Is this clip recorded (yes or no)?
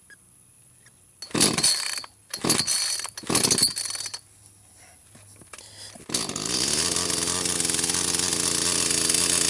yes